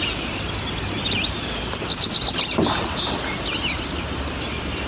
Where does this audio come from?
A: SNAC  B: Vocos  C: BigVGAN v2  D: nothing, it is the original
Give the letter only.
D